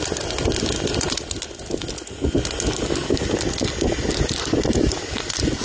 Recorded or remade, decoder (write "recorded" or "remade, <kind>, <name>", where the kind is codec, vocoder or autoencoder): recorded